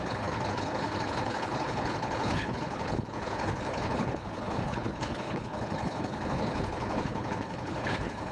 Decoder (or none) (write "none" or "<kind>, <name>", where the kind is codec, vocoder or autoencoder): codec, HILCodec